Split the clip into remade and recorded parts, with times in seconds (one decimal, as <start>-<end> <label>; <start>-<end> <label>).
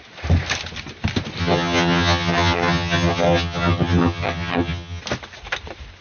0.0-1.4 recorded; 1.4-5.0 remade; 5.0-6.0 recorded